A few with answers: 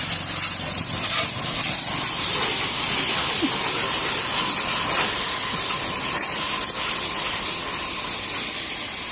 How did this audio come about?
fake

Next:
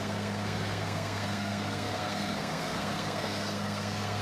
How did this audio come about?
fake